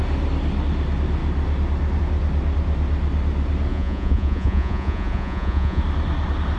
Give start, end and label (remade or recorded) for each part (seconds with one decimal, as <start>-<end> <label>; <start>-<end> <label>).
0.0-3.7 recorded; 3.7-5.8 remade; 5.8-6.6 recorded

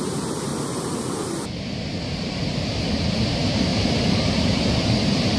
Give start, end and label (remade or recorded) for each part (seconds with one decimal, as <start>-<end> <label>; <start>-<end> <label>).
0.0-0.5 remade; 0.5-2.0 recorded; 2.0-5.4 remade

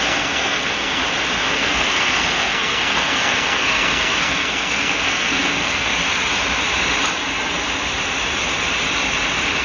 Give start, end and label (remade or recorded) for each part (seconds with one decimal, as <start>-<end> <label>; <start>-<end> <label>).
0.0-1.0 remade; 1.0-1.5 recorded; 1.5-5.9 remade; 5.9-9.6 recorded

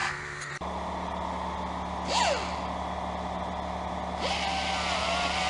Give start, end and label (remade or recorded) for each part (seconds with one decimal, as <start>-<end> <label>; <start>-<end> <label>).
0.0-0.5 remade; 0.5-5.5 recorded

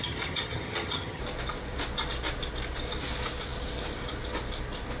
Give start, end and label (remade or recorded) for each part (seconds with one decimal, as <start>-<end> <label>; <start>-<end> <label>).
0.0-1.2 remade; 1.2-5.0 recorded